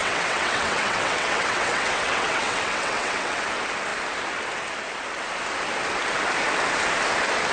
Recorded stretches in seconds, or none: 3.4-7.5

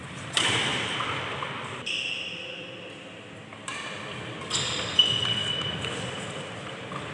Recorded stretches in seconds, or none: 0.0-0.7; 2.1-3.5; 4.2-5.4; 6.4-7.1

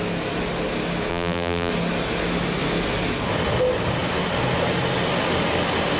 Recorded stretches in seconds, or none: 0.0-1.1; 1.7-6.0